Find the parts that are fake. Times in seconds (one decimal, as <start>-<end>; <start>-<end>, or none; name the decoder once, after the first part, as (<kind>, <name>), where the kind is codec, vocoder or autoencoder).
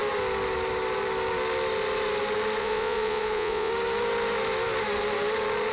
2.6-3.7 (vocoder, Vocos)